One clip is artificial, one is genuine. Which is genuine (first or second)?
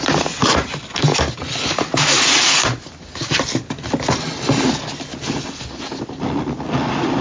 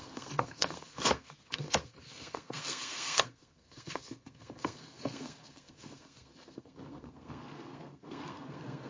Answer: first